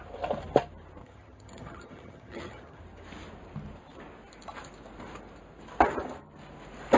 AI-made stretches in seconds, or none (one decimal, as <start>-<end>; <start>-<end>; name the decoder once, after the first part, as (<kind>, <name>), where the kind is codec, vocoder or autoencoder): 1.0-2.8 (vocoder, HiFi-GAN)